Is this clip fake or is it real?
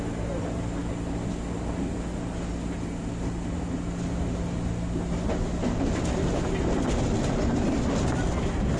real